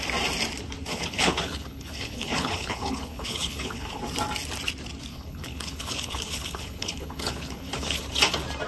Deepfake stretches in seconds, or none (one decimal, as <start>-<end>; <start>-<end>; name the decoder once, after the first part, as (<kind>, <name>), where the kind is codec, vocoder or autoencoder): 0.9-4.0 (codec, HILCodec); 5.1-8.0